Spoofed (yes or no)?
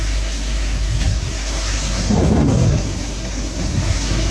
yes